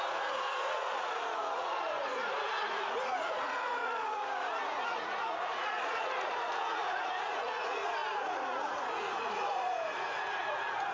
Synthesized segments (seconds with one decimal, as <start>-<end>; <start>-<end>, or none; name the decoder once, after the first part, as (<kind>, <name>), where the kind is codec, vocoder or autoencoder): 0.0-10.9 (vocoder, Vocos)